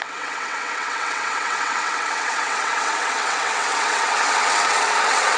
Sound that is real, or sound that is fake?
fake